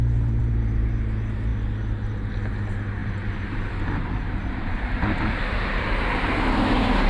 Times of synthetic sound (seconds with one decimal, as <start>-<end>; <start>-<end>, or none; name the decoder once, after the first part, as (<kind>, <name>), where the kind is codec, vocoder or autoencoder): 0.4-0.9 (vocoder, BigVGAN v2); 3.0-5.3